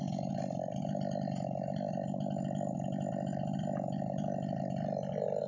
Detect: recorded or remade recorded